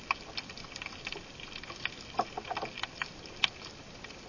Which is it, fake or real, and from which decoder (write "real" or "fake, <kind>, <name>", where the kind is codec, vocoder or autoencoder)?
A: real